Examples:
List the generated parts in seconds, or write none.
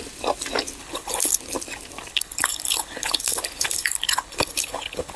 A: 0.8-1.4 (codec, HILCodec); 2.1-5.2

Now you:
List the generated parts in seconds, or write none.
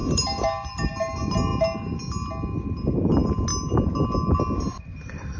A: none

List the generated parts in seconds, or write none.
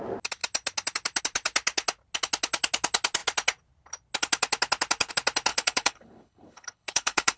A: 5.5-7.4 (codec, HILCodec)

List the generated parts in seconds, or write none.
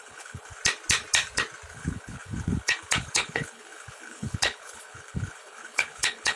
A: 0.0-0.6 (codec, HILCodec); 1.7-6.4